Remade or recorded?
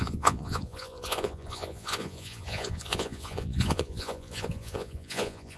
remade